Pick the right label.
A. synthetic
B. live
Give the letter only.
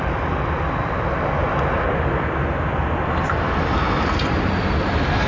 B